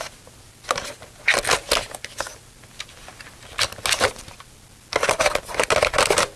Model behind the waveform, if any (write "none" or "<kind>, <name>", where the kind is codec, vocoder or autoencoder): none